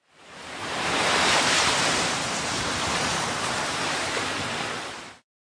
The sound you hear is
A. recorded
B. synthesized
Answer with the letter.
B